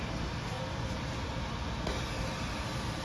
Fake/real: real